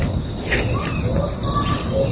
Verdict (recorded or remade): recorded